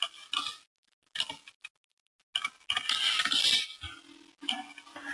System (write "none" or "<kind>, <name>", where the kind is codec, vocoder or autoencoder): none